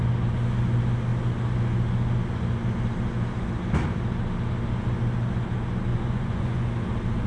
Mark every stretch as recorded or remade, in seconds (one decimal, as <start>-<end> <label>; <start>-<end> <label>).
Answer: 0.0-5.9 recorded; 5.9-6.7 remade; 6.7-7.3 recorded